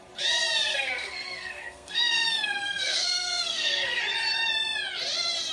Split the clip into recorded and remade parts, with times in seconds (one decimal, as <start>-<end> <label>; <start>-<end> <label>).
0.0-0.7 recorded; 0.7-4.0 remade; 4.0-5.5 recorded

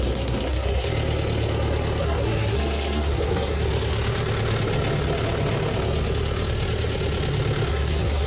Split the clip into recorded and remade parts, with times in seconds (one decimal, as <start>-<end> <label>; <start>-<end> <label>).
0.0-0.9 remade; 0.9-2.0 recorded; 2.0-3.6 remade; 3.6-7.7 recorded; 7.7-8.3 remade

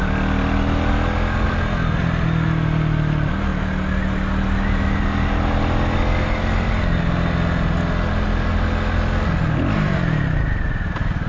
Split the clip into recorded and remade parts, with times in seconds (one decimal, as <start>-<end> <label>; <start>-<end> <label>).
0.0-11.3 recorded

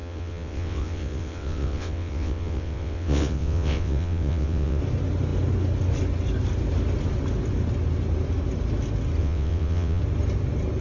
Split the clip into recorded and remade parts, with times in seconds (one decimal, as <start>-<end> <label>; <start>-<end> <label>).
0.0-4.8 remade; 4.8-9.2 recorded; 9.2-10.0 remade; 10.0-10.8 recorded

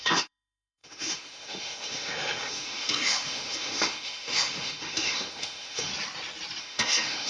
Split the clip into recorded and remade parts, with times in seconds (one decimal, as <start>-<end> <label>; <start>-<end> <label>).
0.0-5.9 remade; 5.9-6.6 recorded; 6.6-7.3 remade